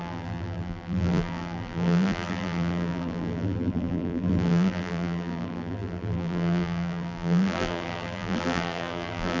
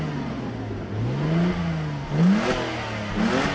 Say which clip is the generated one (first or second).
first